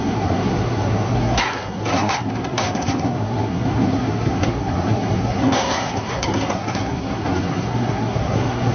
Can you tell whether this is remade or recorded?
remade